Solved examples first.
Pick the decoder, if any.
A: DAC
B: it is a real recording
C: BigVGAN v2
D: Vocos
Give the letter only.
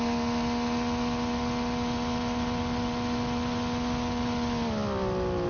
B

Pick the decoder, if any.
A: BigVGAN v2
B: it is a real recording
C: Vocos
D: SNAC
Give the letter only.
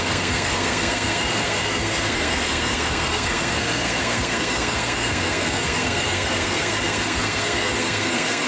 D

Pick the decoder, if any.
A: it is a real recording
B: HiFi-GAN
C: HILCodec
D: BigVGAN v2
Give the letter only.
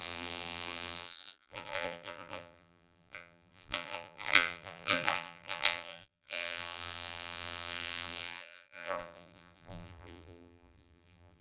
D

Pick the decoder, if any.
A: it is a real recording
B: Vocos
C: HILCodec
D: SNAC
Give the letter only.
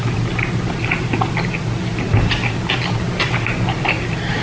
A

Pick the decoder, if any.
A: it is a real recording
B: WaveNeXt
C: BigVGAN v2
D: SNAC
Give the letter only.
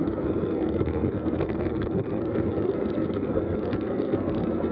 D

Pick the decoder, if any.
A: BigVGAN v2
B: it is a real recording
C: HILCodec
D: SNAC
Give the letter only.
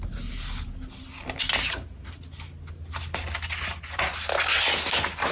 B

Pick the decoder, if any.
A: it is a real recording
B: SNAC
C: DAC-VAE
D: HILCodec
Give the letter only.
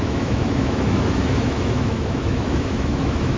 C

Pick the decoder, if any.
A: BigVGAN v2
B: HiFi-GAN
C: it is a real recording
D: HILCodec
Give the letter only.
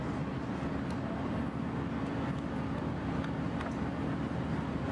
C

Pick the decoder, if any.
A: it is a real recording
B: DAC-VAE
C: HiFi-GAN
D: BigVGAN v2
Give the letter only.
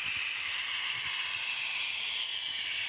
A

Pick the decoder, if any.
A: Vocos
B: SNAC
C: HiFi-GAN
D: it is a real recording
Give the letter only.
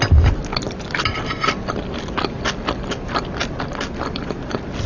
D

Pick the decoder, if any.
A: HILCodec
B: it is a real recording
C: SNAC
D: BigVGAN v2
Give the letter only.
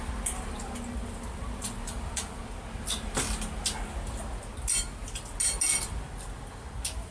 B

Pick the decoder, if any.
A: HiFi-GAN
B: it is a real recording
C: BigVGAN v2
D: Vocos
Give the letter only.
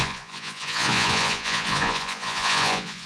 D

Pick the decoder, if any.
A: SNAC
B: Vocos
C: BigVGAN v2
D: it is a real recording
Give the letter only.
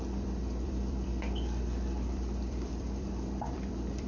C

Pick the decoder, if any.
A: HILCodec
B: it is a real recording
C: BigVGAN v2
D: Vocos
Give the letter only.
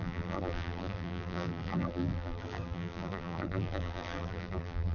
C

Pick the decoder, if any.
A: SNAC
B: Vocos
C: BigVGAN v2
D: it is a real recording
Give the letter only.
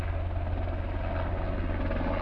D